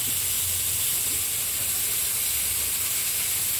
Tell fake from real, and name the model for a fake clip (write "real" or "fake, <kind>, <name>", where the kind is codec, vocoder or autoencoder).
real